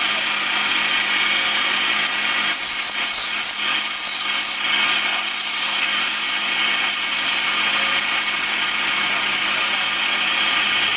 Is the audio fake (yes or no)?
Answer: no